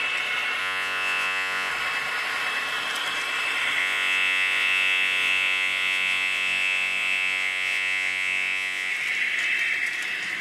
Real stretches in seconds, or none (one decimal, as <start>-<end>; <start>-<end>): 0.0-0.6; 1.7-3.8; 8.9-10.4